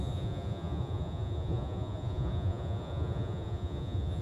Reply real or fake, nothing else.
fake